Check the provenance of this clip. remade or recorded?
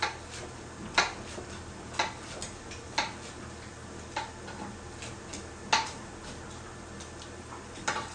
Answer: recorded